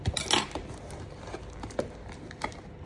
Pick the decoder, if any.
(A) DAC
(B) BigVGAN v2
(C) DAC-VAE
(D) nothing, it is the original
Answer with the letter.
D